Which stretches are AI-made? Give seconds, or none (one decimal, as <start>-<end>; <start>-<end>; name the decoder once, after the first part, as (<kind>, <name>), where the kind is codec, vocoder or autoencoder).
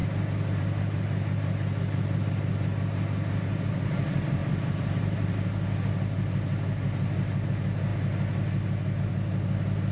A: none